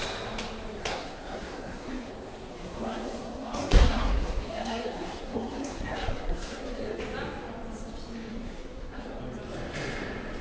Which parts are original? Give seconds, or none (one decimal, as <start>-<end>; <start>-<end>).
0.0-0.8; 2.1-2.5; 7.0-8.3; 9.2-10.4